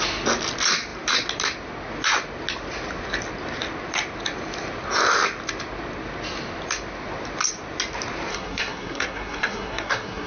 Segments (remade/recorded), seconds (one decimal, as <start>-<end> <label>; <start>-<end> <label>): 0.0-8.3 recorded; 8.3-10.3 remade